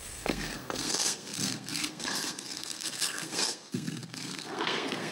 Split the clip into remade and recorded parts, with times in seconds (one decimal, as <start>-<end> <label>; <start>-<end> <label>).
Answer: 0.0-5.1 remade